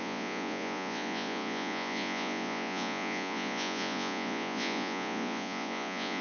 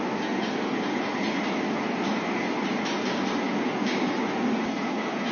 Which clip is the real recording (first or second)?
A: second